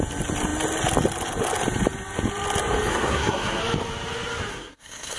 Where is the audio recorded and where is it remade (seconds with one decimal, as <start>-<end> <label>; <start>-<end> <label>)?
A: 0.0-2.9 recorded; 2.9-3.6 remade; 3.6-4.5 recorded; 4.5-5.2 remade